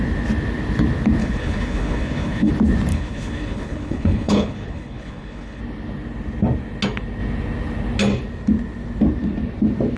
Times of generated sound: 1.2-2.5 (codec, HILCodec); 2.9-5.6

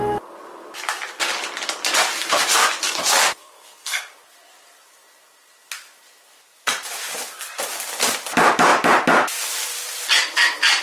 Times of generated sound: 3.4-4.1 (codec, SNAC)

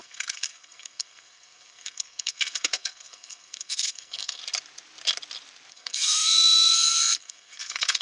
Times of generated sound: 0.0-4.4 (codec, SNAC); 5.7-8.0

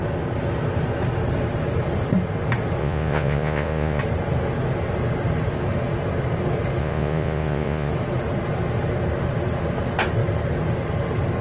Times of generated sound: 2.8-4.0 (vocoder, Vocos); 6.8-7.9